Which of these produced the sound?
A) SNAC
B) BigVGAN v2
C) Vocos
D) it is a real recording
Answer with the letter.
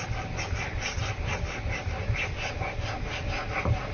D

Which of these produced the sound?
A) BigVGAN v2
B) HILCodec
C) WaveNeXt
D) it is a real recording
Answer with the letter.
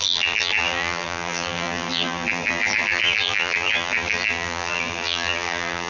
A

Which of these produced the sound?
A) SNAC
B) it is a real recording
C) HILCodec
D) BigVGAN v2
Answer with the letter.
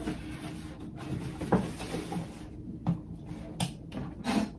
B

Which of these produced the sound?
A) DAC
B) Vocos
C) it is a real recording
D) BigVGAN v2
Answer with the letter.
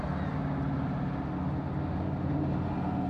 C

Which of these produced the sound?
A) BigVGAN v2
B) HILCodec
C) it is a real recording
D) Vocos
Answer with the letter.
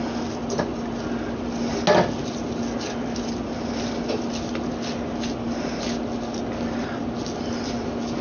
C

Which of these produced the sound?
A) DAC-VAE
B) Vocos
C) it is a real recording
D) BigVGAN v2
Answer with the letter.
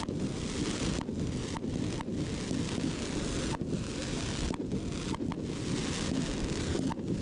C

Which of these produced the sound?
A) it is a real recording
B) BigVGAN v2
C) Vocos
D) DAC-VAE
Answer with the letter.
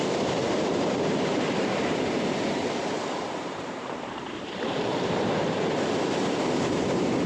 B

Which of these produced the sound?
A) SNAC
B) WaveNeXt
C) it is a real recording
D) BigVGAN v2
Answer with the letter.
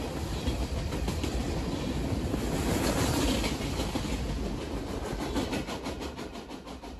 C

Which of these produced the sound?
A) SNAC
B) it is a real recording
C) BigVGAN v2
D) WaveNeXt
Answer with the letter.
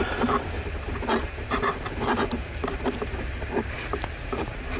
C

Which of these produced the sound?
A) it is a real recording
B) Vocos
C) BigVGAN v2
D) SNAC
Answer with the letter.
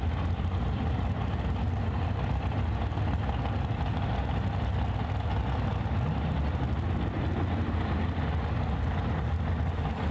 A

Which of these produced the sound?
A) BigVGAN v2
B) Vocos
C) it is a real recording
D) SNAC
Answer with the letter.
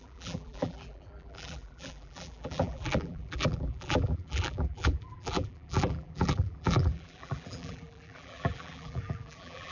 A